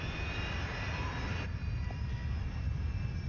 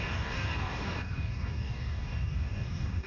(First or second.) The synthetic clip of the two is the second